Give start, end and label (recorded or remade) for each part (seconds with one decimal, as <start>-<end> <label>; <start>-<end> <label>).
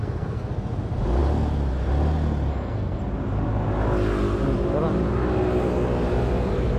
0.0-0.5 remade; 0.5-2.5 recorded; 2.5-3.0 remade; 3.0-6.8 recorded